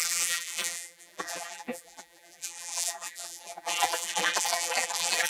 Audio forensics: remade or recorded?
remade